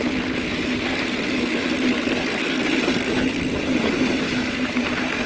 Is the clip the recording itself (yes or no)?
yes